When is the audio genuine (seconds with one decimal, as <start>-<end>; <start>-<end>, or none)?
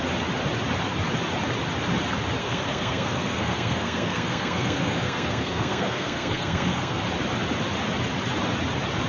0.0-2.4; 7.0-9.1